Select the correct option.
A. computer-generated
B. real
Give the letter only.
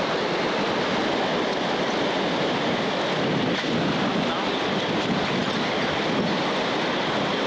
B